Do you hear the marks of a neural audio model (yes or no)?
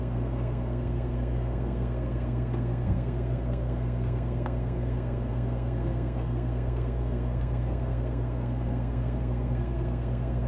yes